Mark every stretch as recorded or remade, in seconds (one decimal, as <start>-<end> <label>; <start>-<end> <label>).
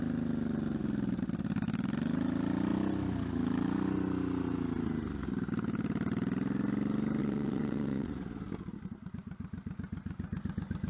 0.0-7.2 recorded; 7.2-8.1 remade; 8.1-10.9 recorded